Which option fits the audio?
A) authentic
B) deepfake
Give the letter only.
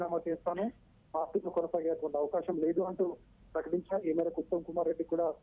B